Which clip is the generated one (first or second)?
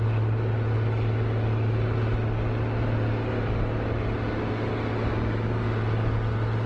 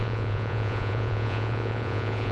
second